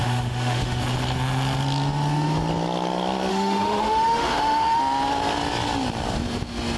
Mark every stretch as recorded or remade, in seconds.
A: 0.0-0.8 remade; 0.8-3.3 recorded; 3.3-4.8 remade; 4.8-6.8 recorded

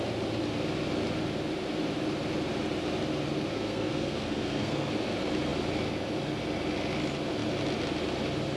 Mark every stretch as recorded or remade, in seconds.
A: 0.0-3.5 recorded; 3.5-4.9 remade; 4.9-8.6 recorded

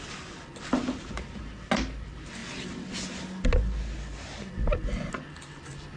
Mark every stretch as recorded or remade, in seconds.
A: 0.0-6.0 recorded